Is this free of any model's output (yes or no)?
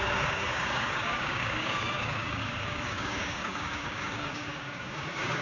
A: no